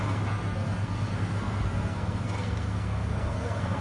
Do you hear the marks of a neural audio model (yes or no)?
yes